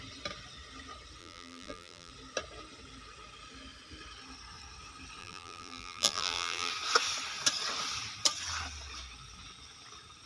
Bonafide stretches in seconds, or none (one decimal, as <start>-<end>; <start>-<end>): 0.0-1.2; 2.1-5.2; 6.7-10.3